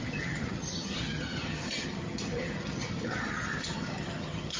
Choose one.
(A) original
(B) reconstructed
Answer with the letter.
B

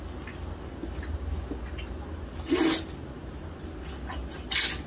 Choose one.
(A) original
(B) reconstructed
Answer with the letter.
A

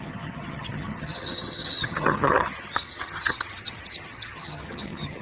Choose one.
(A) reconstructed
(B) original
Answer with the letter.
A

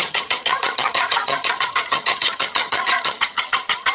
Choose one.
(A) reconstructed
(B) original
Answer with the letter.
A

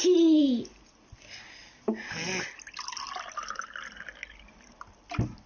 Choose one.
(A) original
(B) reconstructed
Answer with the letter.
A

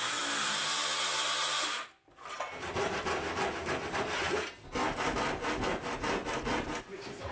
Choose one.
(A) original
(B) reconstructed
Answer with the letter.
A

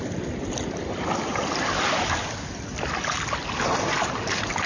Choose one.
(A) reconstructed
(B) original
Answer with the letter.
B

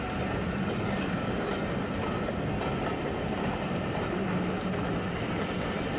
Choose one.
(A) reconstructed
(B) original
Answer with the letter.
B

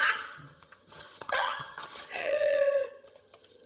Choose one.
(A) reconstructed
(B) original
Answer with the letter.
A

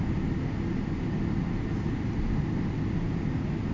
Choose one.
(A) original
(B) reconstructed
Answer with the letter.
A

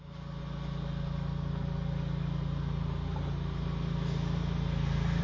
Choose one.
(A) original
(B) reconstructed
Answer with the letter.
A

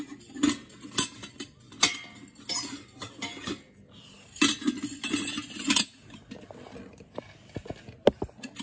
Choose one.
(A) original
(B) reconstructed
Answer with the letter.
A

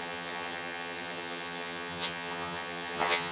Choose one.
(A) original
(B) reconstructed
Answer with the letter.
B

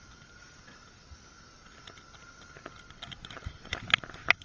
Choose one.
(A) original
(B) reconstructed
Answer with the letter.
A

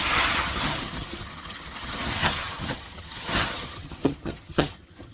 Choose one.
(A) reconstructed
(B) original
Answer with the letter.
A